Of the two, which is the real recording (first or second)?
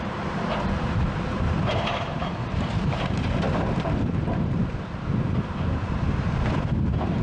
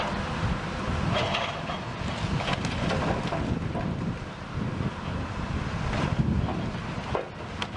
second